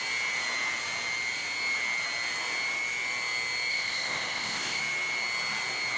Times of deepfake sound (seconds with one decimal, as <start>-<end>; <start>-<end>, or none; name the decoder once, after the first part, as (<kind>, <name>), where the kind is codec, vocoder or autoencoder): 3.7-4.8 (codec, ZipCodec)